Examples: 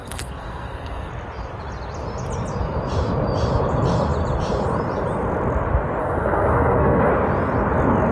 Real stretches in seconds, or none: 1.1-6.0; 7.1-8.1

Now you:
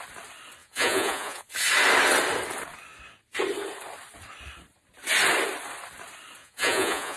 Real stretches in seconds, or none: 0.0-0.6; 1.5-6.4